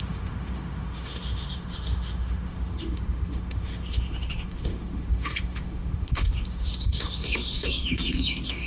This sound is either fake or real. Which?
fake